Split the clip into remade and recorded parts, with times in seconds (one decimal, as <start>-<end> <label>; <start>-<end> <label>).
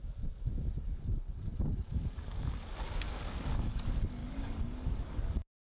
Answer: 0.0-1.9 recorded; 1.9-3.8 remade; 3.8-4.2 recorded; 4.2-5.7 remade